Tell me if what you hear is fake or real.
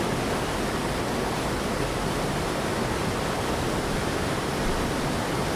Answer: real